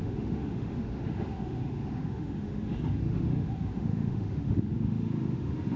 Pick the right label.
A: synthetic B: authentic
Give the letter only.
A